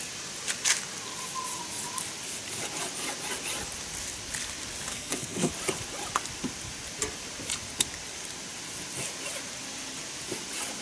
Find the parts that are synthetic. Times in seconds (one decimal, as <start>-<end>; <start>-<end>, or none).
4.9-5.5